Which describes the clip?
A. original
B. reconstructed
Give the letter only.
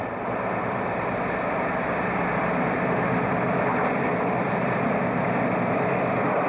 A